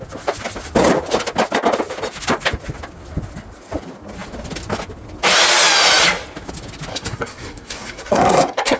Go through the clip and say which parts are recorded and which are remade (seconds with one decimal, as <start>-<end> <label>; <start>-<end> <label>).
0.0-6.9 recorded; 6.9-8.8 remade